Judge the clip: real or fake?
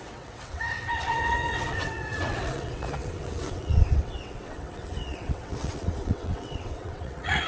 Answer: fake